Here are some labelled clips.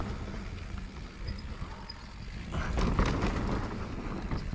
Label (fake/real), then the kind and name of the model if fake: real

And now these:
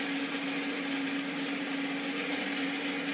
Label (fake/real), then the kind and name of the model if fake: real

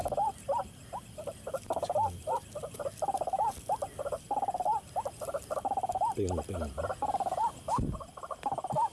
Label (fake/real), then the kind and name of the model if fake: real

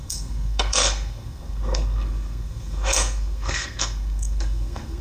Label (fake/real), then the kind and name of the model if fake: fake, codec, SNAC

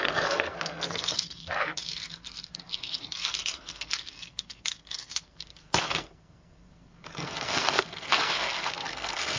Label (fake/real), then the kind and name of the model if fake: fake, codec, SNAC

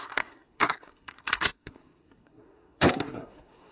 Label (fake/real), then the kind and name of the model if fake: fake, codec, SNAC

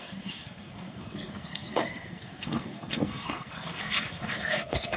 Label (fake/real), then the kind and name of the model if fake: fake, codec, SNAC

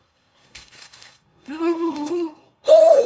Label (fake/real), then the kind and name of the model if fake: fake, codec, SNAC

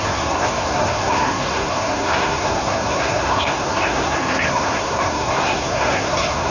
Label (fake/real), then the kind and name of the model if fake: fake, codec, SNAC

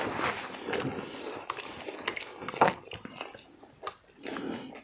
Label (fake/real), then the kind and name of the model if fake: real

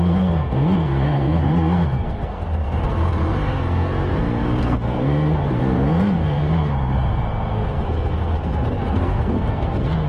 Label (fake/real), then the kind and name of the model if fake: fake, codec, SNAC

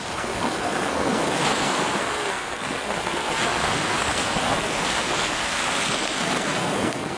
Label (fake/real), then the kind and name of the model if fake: fake, codec, SNAC